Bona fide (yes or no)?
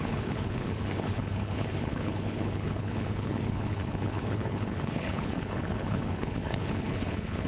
no